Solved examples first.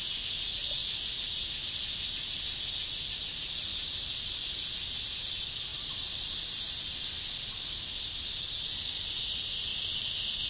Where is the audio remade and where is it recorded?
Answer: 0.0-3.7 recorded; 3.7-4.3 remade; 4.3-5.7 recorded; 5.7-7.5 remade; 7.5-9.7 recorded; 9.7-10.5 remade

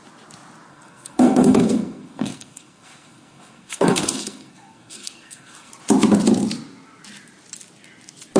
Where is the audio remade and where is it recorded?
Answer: 0.0-0.7 recorded; 0.7-5.7 remade; 5.7-8.4 recorded

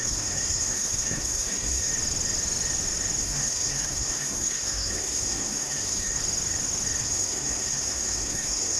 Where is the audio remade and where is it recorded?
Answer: 0.0-1.9 remade; 1.9-3.2 recorded; 3.2-6.2 remade; 6.2-7.0 recorded; 7.0-8.8 remade

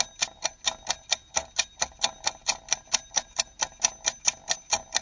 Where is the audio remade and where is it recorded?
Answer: 0.0-5.0 recorded

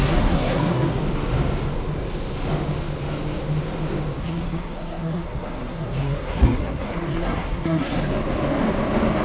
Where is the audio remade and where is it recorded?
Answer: 0.0-1.0 remade; 1.0-4.2 recorded; 4.2-8.0 remade; 8.0-9.2 recorded

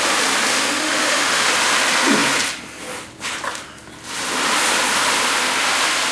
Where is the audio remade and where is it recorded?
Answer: 0.0-0.5 recorded; 0.5-1.5 remade; 1.5-6.1 recorded